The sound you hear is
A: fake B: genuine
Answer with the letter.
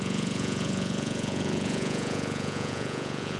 A